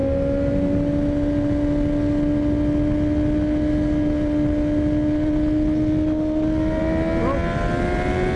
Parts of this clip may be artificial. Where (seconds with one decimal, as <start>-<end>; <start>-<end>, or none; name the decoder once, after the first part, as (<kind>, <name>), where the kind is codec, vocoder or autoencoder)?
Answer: none